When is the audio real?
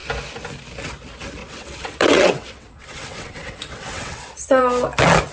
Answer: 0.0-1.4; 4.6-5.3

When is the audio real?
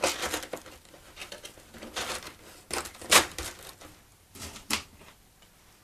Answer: 0.0-1.2; 2.0-4.1; 5.0-5.8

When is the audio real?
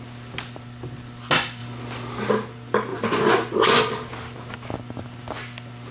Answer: 0.0-2.9; 3.8-5.9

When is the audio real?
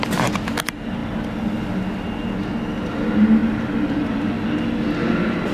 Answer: 0.0-5.5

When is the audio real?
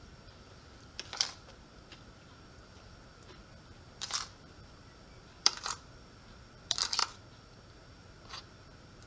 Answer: 7.0-7.7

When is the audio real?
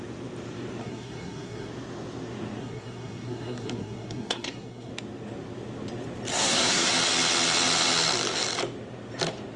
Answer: 0.0-0.8; 1.7-2.6; 4.9-6.3; 6.9-9.6